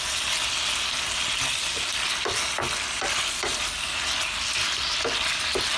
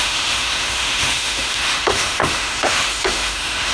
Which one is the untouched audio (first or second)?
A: first